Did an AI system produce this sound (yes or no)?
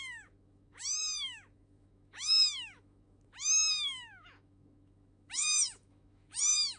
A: yes